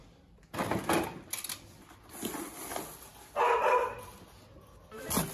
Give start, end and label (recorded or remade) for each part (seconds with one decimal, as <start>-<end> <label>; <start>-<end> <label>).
0.0-1.0 remade; 1.0-5.3 recorded